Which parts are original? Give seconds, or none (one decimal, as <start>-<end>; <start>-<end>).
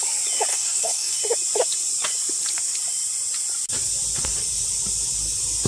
0.0-0.5; 1.2-5.7